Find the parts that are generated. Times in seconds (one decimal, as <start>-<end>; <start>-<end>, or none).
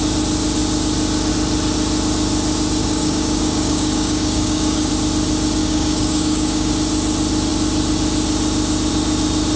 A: 2.8-4.9; 5.6-6.7